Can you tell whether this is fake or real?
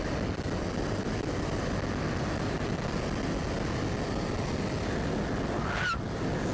real